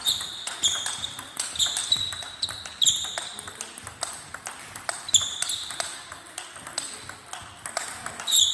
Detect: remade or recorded recorded